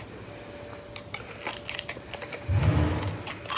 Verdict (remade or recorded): recorded